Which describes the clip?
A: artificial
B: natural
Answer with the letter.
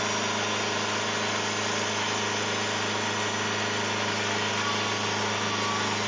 B